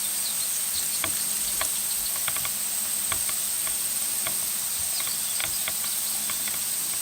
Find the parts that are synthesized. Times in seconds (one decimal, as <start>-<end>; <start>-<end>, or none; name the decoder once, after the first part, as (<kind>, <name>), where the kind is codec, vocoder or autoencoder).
none